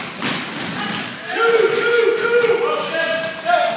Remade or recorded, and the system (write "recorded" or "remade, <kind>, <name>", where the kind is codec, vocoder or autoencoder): recorded